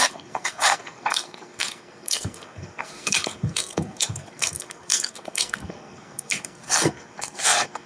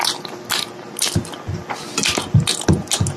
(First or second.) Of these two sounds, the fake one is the first